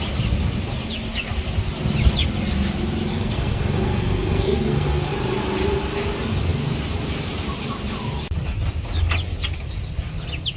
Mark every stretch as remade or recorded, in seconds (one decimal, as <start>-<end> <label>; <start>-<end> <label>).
0.0-3.1 recorded; 3.1-5.1 remade; 5.1-10.6 recorded